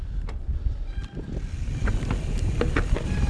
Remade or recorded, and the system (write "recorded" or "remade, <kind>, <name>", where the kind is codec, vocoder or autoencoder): recorded